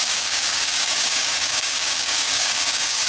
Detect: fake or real fake